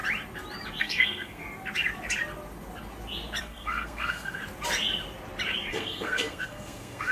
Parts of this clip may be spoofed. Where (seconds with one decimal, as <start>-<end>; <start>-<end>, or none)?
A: 0.8-1.4; 3.4-4.4; 5.7-7.1